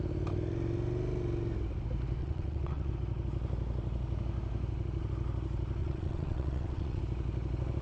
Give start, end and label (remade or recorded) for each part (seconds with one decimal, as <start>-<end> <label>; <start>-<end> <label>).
0.0-2.2 recorded; 2.2-2.9 remade; 2.9-5.8 recorded; 5.8-7.0 remade; 7.0-7.8 recorded